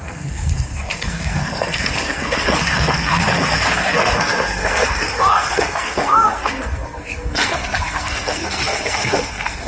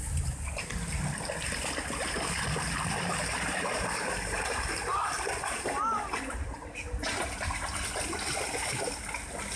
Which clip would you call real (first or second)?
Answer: second